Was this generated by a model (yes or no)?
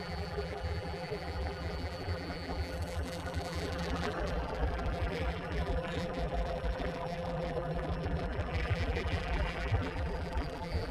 yes